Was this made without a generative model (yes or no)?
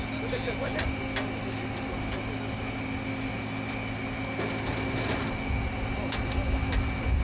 yes